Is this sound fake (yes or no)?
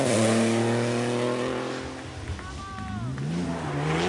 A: no